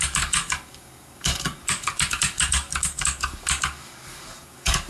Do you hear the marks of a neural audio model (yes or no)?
yes